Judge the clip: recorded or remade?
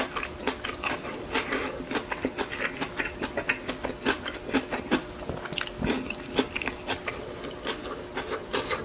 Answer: recorded